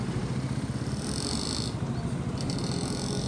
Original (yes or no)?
yes